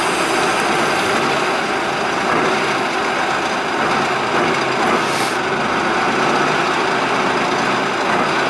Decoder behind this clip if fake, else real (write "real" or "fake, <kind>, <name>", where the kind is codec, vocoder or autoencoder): real